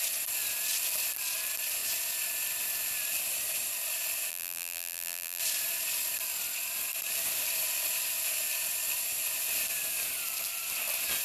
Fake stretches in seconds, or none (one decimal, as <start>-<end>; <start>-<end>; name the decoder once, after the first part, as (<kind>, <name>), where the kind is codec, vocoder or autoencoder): 4.3-5.4 (vocoder, BigVGAN v2)